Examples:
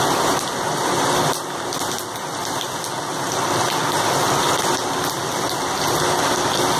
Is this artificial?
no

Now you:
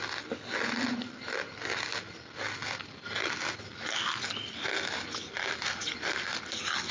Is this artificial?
no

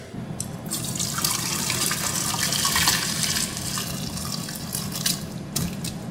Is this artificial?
no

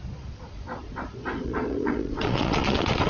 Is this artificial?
yes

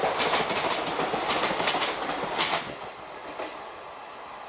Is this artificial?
no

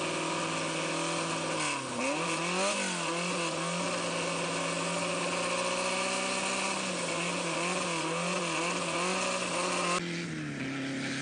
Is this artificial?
no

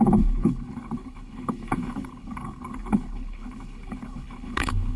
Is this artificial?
yes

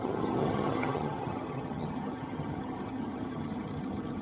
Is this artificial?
yes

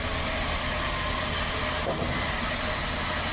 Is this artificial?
no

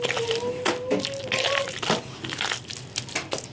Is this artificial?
no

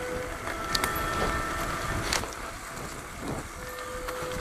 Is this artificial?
no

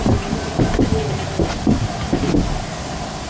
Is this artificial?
no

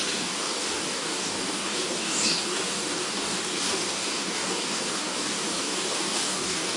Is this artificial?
yes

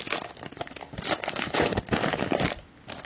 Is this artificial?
no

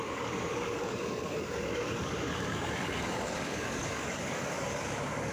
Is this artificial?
yes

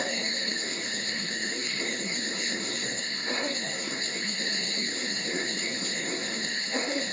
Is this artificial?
yes